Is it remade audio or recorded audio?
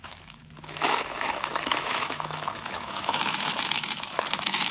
remade